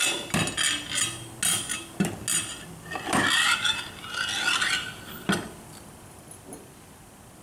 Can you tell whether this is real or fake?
real